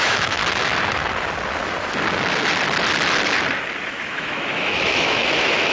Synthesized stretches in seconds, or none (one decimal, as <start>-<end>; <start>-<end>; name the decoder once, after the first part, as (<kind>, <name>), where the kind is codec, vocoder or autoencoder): 0.0-0.4 (autoencoder, DAC-VAE); 3.8-5.7